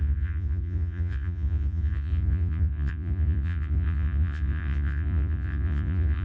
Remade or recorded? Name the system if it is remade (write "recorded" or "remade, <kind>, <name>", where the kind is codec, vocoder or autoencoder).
remade, vocoder, Vocos